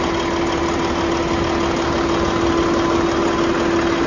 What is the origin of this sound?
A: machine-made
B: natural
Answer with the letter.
B